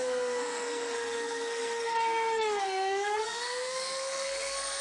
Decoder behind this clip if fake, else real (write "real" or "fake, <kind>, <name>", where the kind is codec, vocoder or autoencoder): fake, codec, SNAC